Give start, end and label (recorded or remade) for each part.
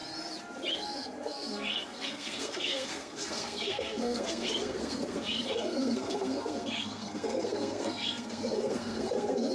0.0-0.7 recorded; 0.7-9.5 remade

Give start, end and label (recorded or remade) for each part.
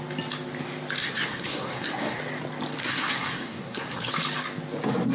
0.0-1.0 recorded; 1.0-2.2 remade; 2.2-2.8 recorded; 2.8-4.1 remade; 4.1-5.1 recorded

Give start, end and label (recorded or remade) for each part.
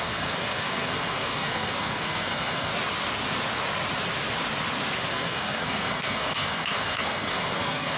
0.0-2.7 remade; 2.7-5.1 recorded; 5.1-8.0 remade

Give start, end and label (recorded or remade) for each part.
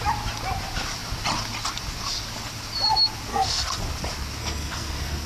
0.0-3.3 recorded; 3.3-3.8 remade; 3.8-4.4 recorded; 4.4-5.3 remade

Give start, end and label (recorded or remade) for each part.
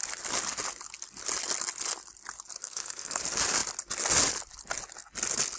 0.0-2.6 recorded; 2.6-3.2 remade; 3.2-5.6 recorded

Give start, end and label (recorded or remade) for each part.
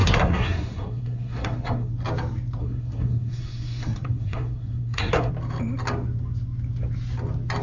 0.0-1.9 remade; 1.9-2.6 recorded; 2.6-5.3 remade; 5.3-7.6 recorded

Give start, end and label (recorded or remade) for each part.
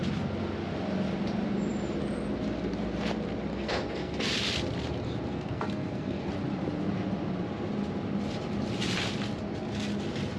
0.0-3.5 recorded; 3.5-4.3 remade; 4.3-5.3 recorded; 5.3-6.3 remade; 6.3-10.4 recorded